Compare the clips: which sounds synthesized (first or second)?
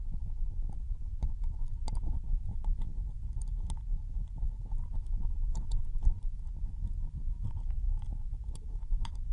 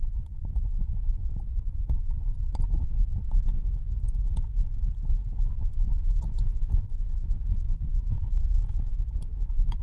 second